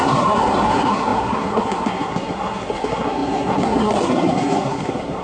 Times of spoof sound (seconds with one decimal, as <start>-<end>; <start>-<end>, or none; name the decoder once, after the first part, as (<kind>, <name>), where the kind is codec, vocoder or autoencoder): 0.0-5.2 (codec, SNAC)